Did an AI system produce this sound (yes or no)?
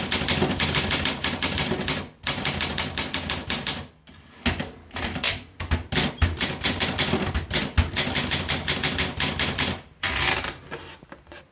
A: no